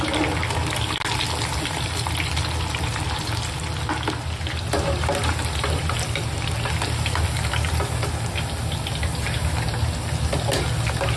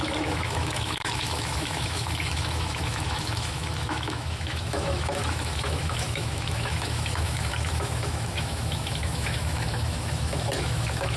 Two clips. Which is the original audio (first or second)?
first